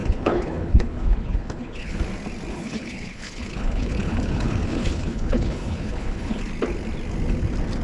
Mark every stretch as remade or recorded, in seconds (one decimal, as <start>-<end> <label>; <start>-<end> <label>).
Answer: 0.0-2.0 remade; 2.0-2.5 recorded; 2.5-6.4 remade; 6.4-7.8 recorded